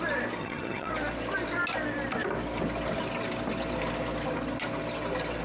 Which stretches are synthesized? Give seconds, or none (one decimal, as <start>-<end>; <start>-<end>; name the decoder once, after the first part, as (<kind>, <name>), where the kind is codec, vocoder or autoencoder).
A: 0.4-0.9 (vocoder, HiFi-GAN)